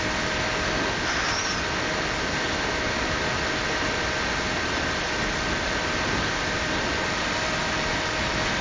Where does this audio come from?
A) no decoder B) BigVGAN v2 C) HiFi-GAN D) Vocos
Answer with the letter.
A